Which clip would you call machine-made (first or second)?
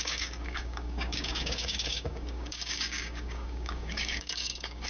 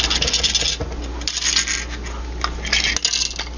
first